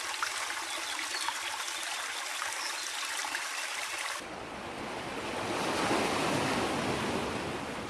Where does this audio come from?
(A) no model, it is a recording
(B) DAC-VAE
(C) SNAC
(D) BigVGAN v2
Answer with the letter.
A